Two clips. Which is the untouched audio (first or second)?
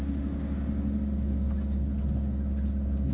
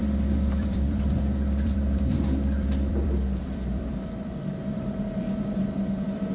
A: first